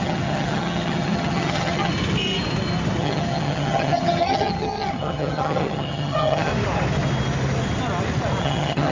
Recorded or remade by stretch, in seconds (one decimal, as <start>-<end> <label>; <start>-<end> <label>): 0.0-1.9 remade; 1.9-3.0 recorded; 3.0-6.5 remade; 6.5-8.4 recorded; 8.4-8.9 remade

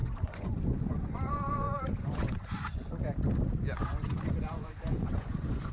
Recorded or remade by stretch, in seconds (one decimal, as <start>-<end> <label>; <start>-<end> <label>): 0.0-3.0 remade; 3.0-3.9 recorded; 3.9-5.7 remade

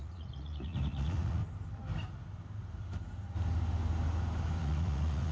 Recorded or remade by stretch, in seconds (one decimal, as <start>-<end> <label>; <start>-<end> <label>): 0.0-1.4 remade; 1.4-4.6 recorded; 4.6-5.3 remade